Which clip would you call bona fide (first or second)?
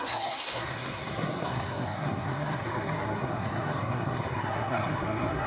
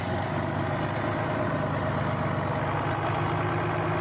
second